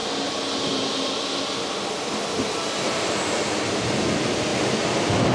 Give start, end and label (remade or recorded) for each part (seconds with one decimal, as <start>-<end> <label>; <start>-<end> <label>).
0.0-4.5 recorded; 4.5-5.3 remade